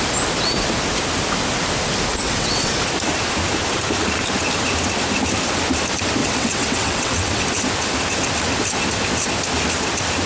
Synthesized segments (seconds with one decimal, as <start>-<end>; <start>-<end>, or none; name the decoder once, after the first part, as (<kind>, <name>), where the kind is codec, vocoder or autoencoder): 2.1-2.7 (vocoder, WaveNeXt); 6.2-7.4